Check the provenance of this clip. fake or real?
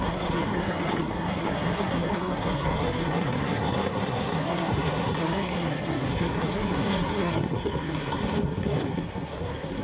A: fake